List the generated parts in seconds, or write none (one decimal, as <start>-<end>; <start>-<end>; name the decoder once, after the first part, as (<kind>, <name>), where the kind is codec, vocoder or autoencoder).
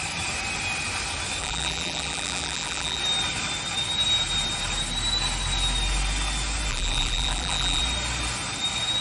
1.4-3.0 (vocoder, BigVGAN v2); 6.7-7.8